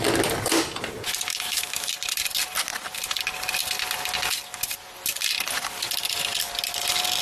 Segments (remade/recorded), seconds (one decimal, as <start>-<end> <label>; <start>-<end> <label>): 0.0-1.3 recorded; 1.3-1.9 remade; 1.9-7.2 recorded